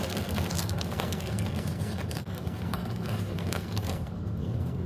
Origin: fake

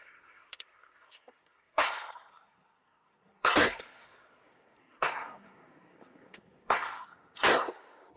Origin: fake